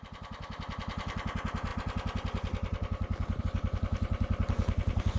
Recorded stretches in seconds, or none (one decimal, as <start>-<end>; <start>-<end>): 0.0-5.2